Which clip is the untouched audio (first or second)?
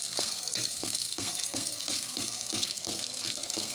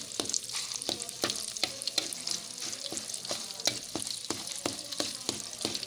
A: second